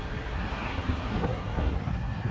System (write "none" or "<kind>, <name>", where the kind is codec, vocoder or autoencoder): codec, SNAC